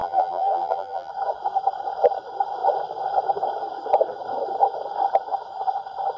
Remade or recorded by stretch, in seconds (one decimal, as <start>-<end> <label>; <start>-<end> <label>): 0.0-1.1 remade; 1.1-6.2 recorded